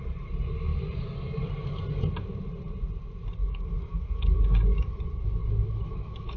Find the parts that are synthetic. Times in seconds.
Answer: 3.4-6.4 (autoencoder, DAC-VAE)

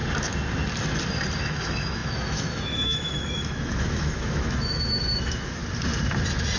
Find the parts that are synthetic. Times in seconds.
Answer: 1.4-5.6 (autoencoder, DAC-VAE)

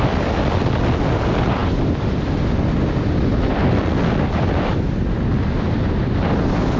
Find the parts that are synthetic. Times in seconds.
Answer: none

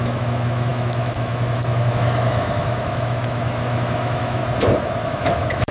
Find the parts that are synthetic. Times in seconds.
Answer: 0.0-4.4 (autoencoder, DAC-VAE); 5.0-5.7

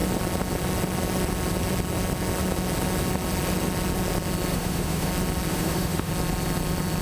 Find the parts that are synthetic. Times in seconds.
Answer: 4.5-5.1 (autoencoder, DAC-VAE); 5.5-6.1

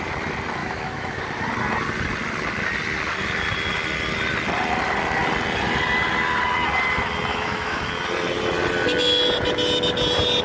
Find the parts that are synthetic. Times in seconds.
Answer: 0.6-1.2 (autoencoder, DAC-VAE); 7.3-7.9

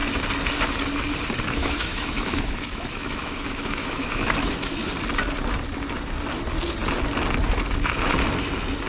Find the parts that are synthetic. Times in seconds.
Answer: 1.6-4.7 (autoencoder, DAC-VAE)